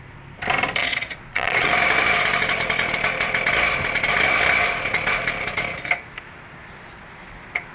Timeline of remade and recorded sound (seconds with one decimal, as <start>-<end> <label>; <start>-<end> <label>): 0.0-0.8 recorded; 0.8-1.7 remade; 1.7-7.7 recorded